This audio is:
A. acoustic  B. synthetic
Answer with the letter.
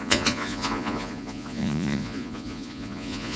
B